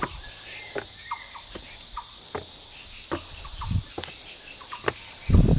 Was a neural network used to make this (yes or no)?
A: no